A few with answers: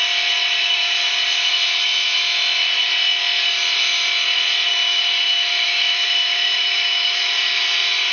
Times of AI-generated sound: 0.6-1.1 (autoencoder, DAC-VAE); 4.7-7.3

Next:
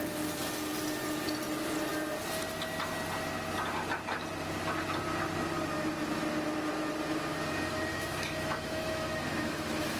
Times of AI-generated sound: 7.9-10.0 (autoencoder, DAC-VAE)

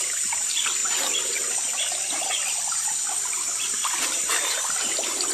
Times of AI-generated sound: none

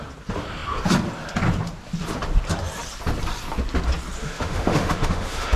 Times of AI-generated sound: 4.2-5.6 (autoencoder, DAC-VAE)

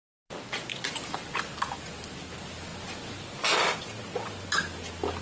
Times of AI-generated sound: none

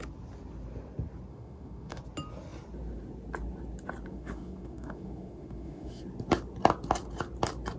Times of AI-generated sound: 1.3-2.0 (autoencoder, DAC-VAE); 4.1-6.0